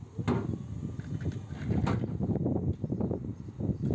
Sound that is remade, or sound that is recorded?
recorded